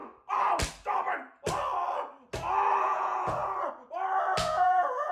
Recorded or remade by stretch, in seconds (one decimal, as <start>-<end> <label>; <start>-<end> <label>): 0.0-2.8 recorded; 2.8-3.4 remade; 3.4-4.4 recorded; 4.4-5.1 remade